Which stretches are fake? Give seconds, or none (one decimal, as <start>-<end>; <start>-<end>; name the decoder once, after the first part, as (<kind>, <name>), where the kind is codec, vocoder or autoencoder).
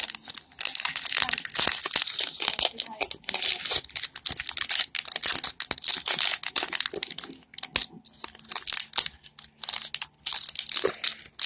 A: none